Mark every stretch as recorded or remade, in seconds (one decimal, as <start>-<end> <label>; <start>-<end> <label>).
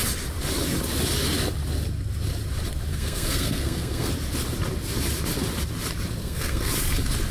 0.0-2.9 recorded; 2.9-4.1 remade; 4.1-6.2 recorded; 6.2-6.7 remade; 6.7-7.3 recorded